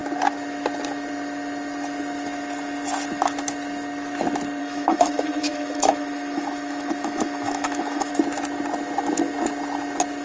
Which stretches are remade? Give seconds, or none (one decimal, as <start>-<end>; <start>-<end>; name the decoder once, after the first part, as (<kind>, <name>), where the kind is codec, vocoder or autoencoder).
4.6-8.1 (autoencoder, DAC-VAE)